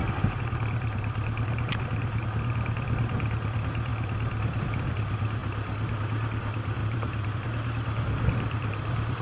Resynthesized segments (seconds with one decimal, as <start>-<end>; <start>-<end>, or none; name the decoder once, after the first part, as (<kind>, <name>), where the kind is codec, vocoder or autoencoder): 0.0-5.4 (vocoder, BigVGAN v2); 6.0-9.2